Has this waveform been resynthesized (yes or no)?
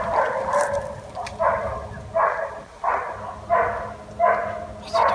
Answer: no